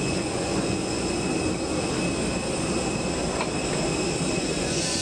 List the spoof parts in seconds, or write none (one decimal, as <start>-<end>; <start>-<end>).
0.0-1.3; 4.3-5.0